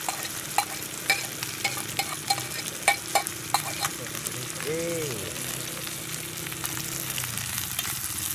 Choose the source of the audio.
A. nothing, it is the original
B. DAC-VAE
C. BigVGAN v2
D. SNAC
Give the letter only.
A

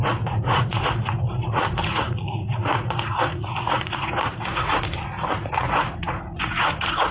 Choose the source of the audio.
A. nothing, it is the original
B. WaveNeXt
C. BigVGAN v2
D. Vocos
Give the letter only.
D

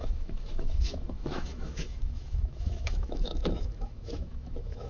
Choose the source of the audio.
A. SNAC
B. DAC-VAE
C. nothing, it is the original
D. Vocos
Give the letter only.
B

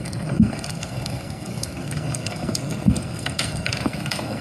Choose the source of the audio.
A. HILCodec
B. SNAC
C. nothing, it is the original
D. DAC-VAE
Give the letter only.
B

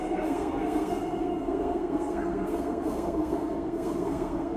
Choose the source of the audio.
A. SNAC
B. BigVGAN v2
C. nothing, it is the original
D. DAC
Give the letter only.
A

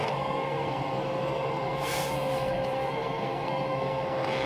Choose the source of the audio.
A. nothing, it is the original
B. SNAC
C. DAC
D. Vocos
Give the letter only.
B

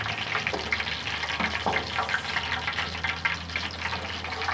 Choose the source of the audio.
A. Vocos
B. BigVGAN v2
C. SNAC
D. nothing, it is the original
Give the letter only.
D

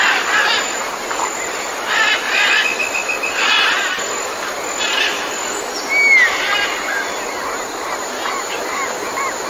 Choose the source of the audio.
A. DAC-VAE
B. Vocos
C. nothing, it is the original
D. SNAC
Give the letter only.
C